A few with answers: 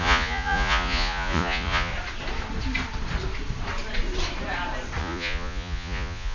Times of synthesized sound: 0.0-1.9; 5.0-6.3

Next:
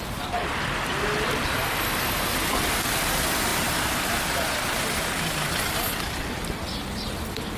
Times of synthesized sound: none